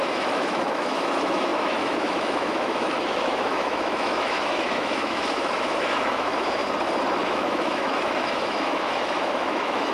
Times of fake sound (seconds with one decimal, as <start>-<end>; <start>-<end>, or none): 0.0-6.6; 7.3-9.9